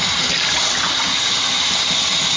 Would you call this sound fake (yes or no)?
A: no